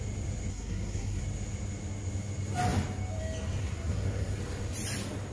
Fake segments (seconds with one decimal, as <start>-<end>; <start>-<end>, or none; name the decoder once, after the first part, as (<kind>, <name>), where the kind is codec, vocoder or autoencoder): 0.5-1.2 (codec, SNAC); 3.6-4.4